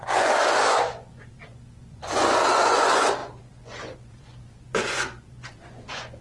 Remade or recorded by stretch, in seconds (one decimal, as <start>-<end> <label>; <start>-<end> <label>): 0.0-6.2 remade